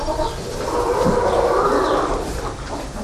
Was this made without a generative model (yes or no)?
no